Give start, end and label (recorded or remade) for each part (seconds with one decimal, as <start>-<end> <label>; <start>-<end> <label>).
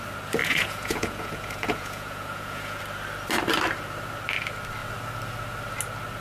0.0-0.4 recorded; 0.4-2.8 remade; 2.8-6.2 recorded